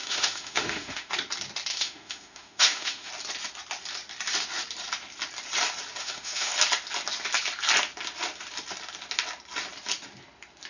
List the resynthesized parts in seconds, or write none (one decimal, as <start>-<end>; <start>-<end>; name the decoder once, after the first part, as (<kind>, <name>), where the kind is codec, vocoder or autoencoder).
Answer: 0.0-1.1 (autoencoder, DAC-VAE); 1.7-3.1; 6.0-6.5